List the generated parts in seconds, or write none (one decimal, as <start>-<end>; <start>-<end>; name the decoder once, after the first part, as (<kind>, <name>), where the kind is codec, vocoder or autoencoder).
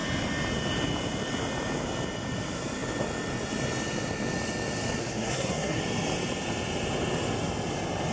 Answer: 5.0-5.8 (codec, SNAC)